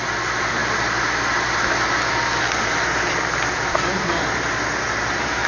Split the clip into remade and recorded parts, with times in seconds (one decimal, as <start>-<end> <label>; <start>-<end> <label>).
0.0-5.5 recorded